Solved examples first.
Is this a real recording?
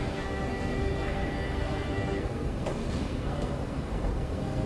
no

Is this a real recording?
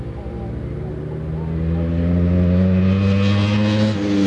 yes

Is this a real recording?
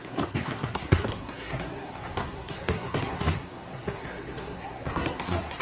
no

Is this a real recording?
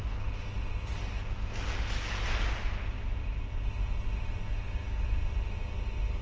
yes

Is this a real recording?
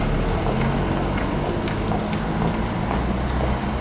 yes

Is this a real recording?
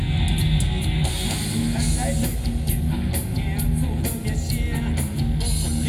yes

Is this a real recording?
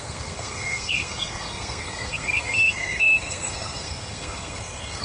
no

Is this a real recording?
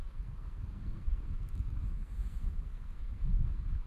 no